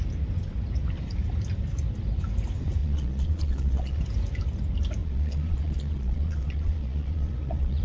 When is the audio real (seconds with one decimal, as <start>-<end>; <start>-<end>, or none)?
0.0-2.8; 4.0-5.0